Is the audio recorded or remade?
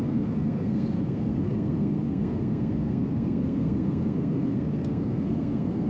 remade